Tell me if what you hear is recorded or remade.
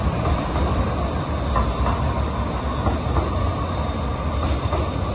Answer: recorded